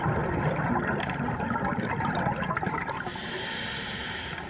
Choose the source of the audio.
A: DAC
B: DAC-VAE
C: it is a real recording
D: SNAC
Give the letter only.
C